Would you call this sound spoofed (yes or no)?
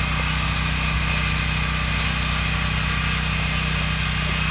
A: no